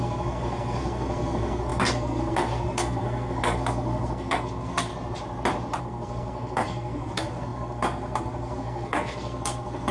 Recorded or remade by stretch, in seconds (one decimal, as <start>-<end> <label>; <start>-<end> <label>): 0.0-4.9 remade; 4.9-5.8 recorded; 5.8-9.9 remade